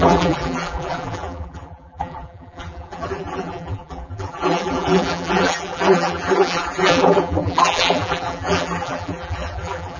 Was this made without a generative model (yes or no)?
no